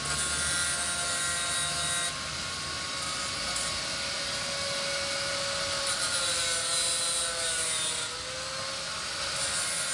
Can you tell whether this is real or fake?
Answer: real